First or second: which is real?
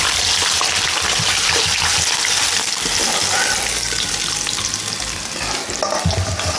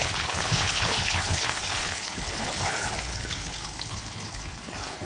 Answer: first